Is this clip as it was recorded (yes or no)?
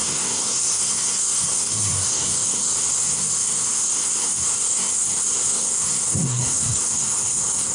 no